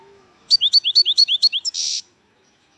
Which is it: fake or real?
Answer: fake